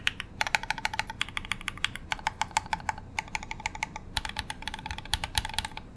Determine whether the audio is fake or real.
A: fake